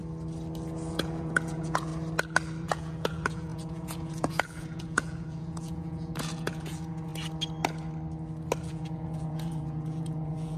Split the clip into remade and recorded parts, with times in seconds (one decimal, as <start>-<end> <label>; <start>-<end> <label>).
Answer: 0.0-0.9 recorded; 0.9-1.9 remade; 1.9-2.6 recorded; 2.6-7.1 remade; 7.1-8.6 recorded; 8.6-10.6 remade